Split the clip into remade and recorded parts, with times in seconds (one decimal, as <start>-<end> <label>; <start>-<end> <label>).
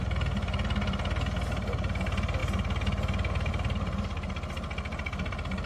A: 0.0-5.7 recorded